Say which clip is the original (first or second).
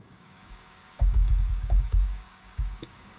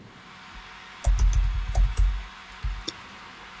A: second